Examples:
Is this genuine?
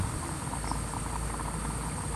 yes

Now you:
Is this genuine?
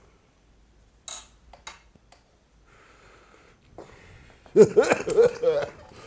yes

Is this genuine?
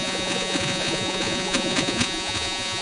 no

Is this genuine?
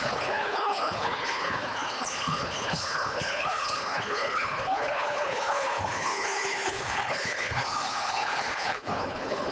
no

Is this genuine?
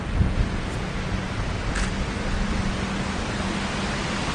yes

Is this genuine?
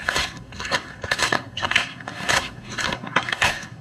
no